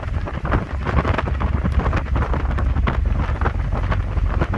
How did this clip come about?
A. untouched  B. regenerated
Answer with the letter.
A